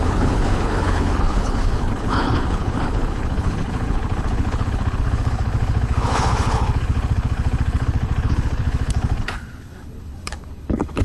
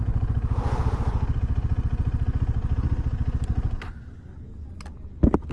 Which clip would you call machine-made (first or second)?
first